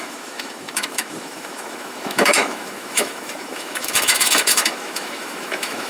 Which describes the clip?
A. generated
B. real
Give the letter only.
A